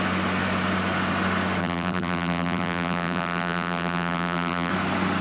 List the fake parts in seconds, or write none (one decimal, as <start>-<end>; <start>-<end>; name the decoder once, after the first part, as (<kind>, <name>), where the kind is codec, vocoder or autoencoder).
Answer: 1.6-4.7 (vocoder, BigVGAN v2)